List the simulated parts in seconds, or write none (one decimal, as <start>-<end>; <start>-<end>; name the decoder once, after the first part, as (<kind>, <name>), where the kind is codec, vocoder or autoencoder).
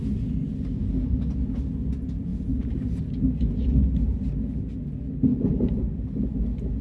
2.3-3.0 (vocoder, BigVGAN v2); 5.3-5.8